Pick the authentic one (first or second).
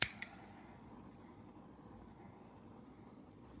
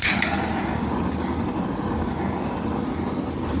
second